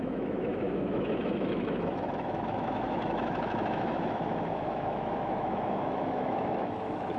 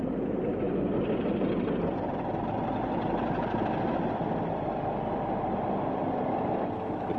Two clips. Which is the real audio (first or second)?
second